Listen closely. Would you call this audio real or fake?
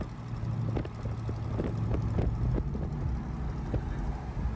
real